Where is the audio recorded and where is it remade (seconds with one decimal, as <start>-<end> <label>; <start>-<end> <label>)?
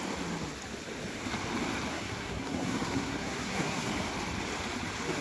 0.0-1.9 recorded; 1.9-3.9 remade; 3.9-5.2 recorded